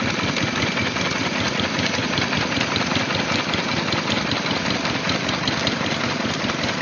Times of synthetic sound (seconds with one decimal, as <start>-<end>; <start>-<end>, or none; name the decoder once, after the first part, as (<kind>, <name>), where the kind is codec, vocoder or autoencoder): none